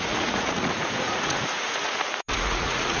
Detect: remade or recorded remade